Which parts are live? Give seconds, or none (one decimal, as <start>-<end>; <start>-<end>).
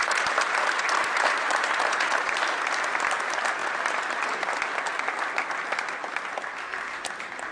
2.3-3.6; 4.3-7.5